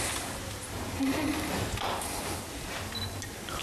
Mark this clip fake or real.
real